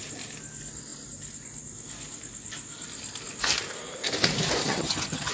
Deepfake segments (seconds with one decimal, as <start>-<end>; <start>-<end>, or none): 4.6-5.3